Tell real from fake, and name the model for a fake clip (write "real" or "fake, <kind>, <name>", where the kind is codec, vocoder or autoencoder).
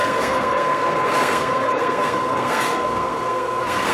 fake, codec, SNAC